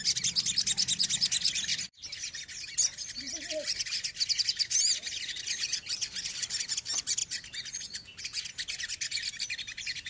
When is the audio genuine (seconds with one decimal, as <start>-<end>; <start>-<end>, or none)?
0.0-10.1